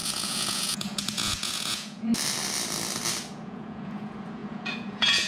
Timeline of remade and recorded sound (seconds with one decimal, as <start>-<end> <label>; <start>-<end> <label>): 0.0-2.1 remade; 2.1-3.3 recorded; 3.3-5.3 remade